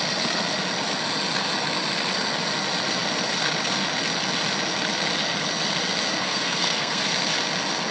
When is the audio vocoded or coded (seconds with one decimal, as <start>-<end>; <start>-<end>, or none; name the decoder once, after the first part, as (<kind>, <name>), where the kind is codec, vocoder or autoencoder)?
6.2-7.0 (codec, SNAC)